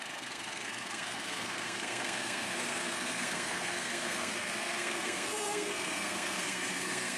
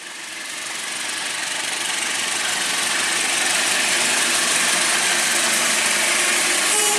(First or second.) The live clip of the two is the second